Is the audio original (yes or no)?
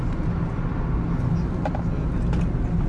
yes